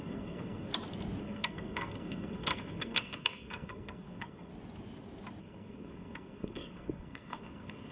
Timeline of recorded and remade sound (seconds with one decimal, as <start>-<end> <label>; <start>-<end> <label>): 0.0-0.7 remade; 0.7-1.2 recorded; 1.2-4.5 remade; 4.5-5.4 recorded; 5.4-7.9 remade